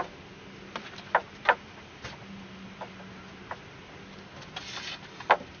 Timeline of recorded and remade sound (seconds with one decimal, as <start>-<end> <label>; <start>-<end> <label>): 0.0-5.6 recorded